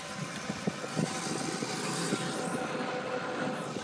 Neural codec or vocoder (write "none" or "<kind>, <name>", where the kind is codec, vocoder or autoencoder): none